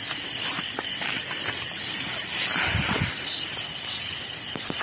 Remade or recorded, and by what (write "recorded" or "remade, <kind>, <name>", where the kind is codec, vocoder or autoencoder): remade, vocoder, BigVGAN v2